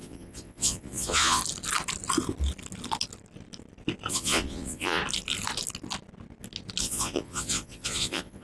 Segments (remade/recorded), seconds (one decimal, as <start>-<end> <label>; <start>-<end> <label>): 0.0-1.4 remade; 1.4-4.1 recorded; 4.1-5.0 remade; 5.0-6.8 recorded; 6.8-8.4 remade